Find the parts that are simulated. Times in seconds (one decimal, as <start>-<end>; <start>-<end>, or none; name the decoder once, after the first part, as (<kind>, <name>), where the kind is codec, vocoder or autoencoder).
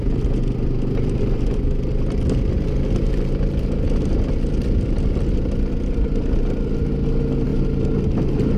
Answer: none